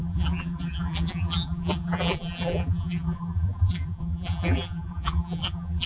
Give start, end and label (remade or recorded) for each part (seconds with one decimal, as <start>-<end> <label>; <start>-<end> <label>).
0.0-5.9 remade